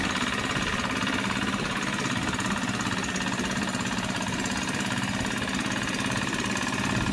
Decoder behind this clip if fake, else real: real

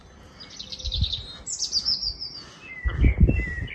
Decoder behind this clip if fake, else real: real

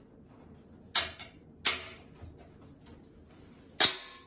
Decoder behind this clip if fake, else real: real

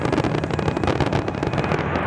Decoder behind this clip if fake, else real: real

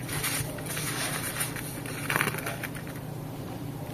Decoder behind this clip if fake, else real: real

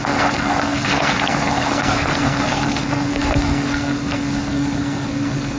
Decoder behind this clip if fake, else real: fake, codec, SNAC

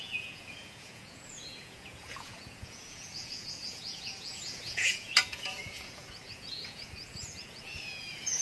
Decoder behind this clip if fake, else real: fake, vocoder, Vocos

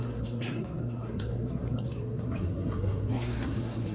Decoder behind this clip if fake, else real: fake, codec, SNAC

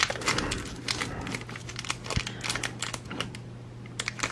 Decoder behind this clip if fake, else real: real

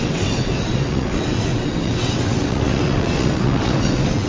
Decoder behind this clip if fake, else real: fake, vocoder, WaveNeXt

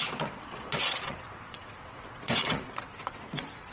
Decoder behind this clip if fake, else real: fake, vocoder, WaveNeXt